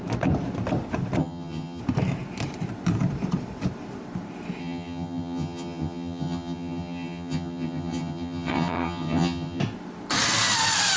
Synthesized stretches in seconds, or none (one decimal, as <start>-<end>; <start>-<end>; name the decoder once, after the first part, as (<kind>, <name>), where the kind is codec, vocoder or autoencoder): 1.2-1.8 (vocoder, HiFi-GAN); 4.6-9.6